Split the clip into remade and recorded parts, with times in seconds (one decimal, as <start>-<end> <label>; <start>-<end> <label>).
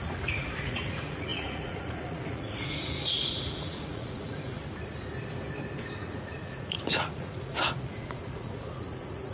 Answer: 0.0-4.6 remade; 4.6-6.0 recorded; 6.0-9.3 remade